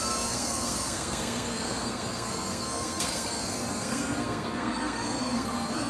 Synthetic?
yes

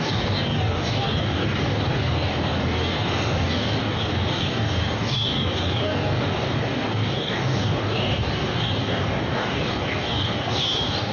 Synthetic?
yes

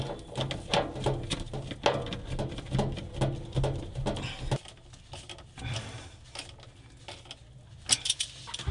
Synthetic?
no